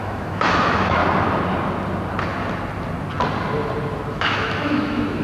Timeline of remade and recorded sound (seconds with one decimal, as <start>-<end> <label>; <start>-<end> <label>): 0.0-1.0 remade; 1.0-4.1 recorded; 4.1-5.2 remade